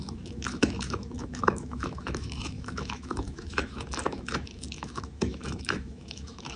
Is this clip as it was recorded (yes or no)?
no